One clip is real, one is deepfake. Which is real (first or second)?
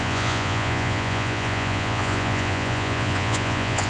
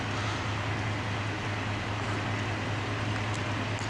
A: second